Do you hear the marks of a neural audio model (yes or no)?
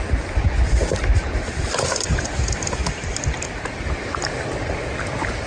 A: no